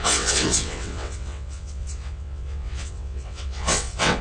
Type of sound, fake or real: fake